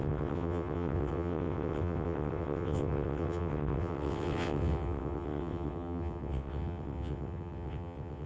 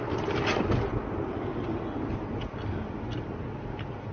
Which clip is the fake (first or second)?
first